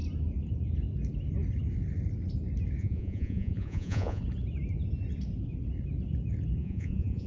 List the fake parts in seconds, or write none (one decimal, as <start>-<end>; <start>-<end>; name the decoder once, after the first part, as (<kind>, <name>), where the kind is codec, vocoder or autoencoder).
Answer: 2.8-4.2 (vocoder, Vocos); 6.6-7.3